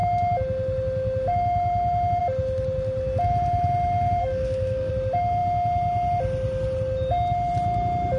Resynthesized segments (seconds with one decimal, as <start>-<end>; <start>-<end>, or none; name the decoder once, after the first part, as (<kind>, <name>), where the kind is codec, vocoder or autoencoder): 4.2-4.9 (codec, SNAC)